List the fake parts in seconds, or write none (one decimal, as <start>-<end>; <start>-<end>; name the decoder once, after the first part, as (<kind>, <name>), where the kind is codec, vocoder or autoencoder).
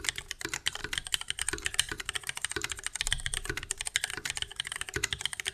none